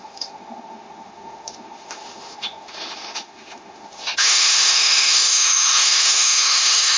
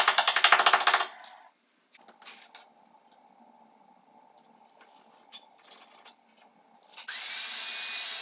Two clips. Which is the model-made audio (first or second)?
first